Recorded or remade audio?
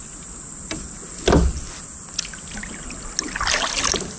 recorded